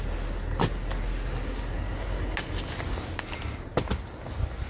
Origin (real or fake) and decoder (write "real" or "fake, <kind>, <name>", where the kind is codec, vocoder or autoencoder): real